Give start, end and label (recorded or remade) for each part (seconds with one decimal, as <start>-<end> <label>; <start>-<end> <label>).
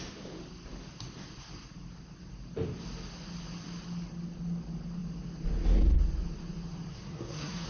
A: 0.0-6.9 recorded; 6.9-7.7 remade